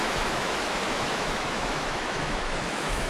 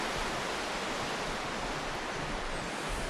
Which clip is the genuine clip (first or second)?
second